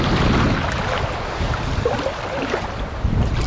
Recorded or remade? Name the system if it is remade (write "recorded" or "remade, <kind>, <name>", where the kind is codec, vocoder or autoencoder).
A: recorded